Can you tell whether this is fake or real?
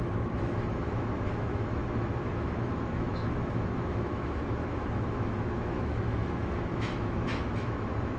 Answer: fake